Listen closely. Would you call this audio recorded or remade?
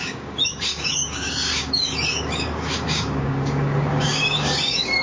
remade